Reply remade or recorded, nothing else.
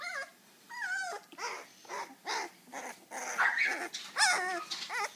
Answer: recorded